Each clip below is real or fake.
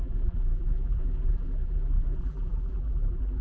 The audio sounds fake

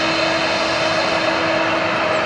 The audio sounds real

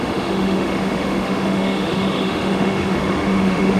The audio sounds fake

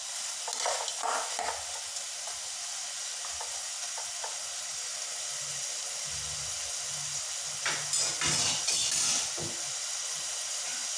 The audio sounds real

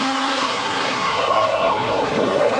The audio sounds fake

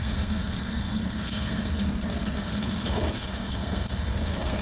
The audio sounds fake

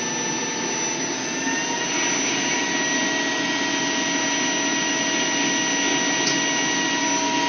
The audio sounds real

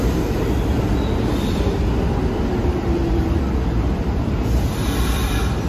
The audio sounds real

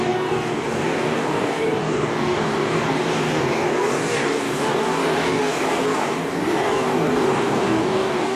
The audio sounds fake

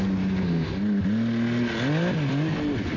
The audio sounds real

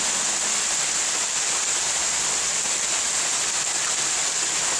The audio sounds real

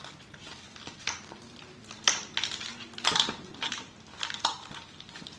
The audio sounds real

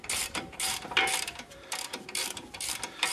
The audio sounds fake